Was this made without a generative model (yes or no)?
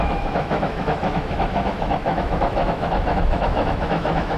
no